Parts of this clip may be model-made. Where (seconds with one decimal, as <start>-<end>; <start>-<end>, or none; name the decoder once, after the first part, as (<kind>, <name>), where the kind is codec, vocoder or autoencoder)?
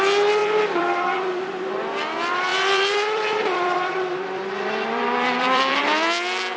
0.4-1.7 (vocoder, BigVGAN v2); 2.5-5.8